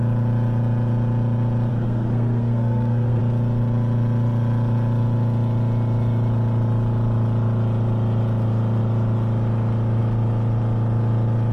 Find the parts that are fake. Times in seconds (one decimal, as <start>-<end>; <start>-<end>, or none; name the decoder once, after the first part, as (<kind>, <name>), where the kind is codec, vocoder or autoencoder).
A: 1.7-3.2 (codec, SNAC)